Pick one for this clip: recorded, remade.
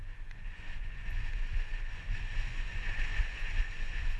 remade